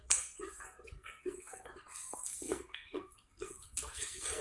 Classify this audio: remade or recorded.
remade